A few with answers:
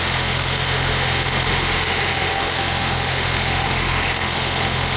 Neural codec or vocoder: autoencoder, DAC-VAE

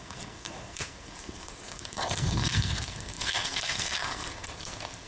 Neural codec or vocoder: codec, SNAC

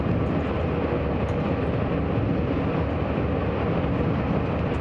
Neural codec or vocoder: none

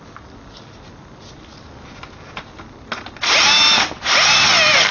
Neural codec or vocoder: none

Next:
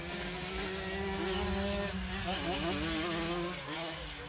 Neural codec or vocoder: none